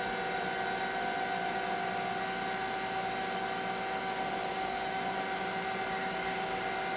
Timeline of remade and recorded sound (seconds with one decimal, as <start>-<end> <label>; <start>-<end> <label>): 0.0-4.5 recorded; 4.5-5.0 remade; 5.0-5.9 recorded; 5.9-6.6 remade; 6.6-7.0 recorded